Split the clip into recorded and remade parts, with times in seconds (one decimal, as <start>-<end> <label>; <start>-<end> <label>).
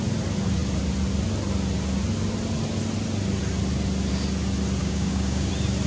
0.0-4.8 recorded; 4.8-5.5 remade; 5.5-5.9 recorded